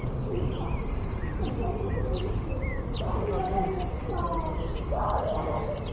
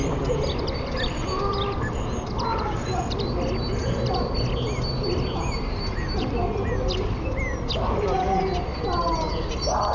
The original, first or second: second